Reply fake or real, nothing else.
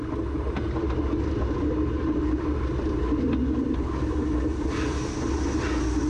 real